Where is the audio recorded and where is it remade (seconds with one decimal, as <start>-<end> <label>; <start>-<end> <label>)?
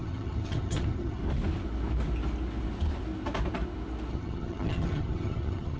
0.0-1.2 remade; 1.2-4.1 recorded; 4.1-5.8 remade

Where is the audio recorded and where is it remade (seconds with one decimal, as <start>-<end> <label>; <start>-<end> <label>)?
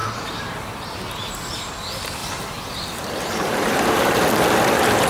0.0-1.3 remade; 1.3-2.2 recorded; 2.2-4.3 remade; 4.3-5.1 recorded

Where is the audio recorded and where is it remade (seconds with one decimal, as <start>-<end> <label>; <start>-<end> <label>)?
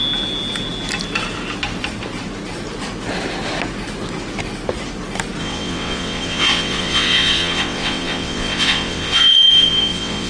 0.0-5.4 recorded; 5.4-10.3 remade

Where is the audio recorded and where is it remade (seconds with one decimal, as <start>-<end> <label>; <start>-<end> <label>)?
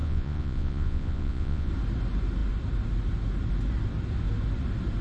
0.0-1.7 remade; 1.7-5.0 recorded